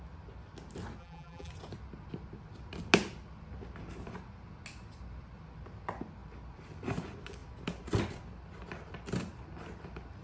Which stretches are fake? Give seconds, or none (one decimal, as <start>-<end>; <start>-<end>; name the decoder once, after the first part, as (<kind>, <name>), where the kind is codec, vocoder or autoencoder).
1.0-1.5 (vocoder, BigVGAN v2)

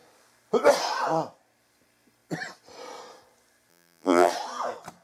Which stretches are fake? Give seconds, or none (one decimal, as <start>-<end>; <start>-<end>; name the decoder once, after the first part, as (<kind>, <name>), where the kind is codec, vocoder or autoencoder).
3.7-4.3 (vocoder, BigVGAN v2)

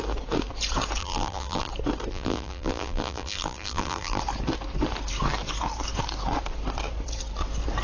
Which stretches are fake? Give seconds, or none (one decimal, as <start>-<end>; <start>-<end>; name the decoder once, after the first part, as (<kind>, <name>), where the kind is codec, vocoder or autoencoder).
1.0-1.7 (vocoder, BigVGAN v2); 2.1-4.2

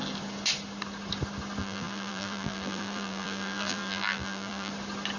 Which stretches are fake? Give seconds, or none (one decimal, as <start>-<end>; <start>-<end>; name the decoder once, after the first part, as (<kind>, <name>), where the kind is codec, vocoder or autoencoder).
1.6-4.7 (vocoder, BigVGAN v2)

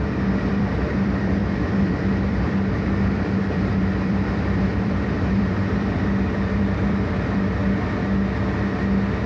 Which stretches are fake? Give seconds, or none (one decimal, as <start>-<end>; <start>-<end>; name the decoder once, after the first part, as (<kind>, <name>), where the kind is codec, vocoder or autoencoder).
0.0-7.6 (vocoder, BigVGAN v2)

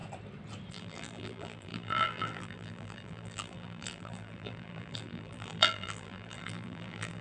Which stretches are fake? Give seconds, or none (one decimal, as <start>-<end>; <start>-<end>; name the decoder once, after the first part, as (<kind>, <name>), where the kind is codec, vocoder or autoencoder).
0.7-7.2 (vocoder, BigVGAN v2)

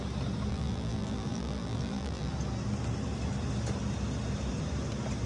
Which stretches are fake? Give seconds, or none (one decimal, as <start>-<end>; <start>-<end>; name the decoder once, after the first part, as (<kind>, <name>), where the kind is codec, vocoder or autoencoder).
0.5-2.3 (vocoder, BigVGAN v2)

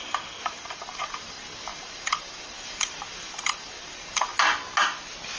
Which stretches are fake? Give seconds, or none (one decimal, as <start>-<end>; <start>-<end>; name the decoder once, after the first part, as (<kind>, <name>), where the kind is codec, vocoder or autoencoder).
0.0-4.3 (vocoder, BigVGAN v2)